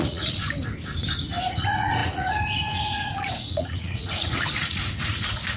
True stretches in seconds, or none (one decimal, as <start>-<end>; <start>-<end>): 0.4-1.5

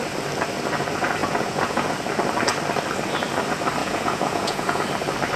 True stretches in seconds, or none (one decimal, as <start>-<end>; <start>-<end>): 0.0-1.2; 1.9-3.8; 4.8-5.4

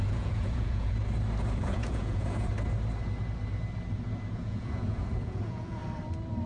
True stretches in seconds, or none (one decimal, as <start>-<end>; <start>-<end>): 1.0-1.6; 2.5-4.3; 5.8-6.5